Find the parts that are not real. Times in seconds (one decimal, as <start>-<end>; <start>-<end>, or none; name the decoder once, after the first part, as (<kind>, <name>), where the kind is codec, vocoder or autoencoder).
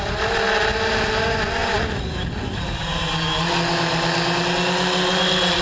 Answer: none